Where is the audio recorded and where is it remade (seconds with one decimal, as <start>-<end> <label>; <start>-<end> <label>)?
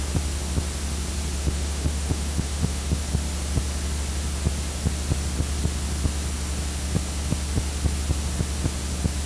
0.0-1.4 recorded; 1.4-3.0 remade; 3.0-9.3 recorded